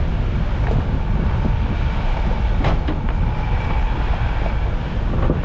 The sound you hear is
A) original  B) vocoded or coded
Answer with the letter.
A